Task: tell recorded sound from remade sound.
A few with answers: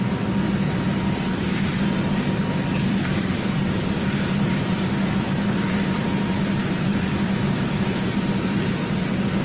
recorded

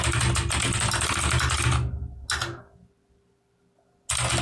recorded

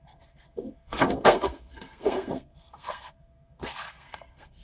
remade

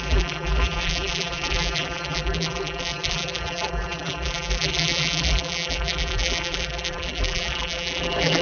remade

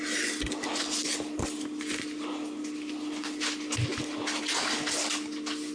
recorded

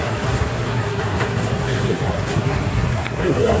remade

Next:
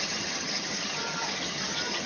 remade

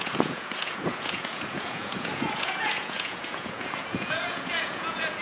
remade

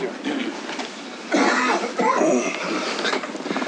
recorded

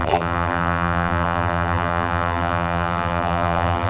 remade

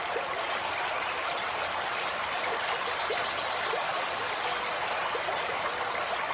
recorded